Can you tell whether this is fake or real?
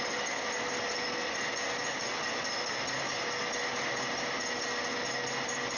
real